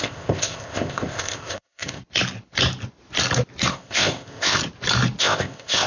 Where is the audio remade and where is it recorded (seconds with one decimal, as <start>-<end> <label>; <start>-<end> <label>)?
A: 0.0-2.0 remade; 2.0-3.7 recorded; 3.7-4.6 remade; 4.6-5.2 recorded; 5.2-5.9 remade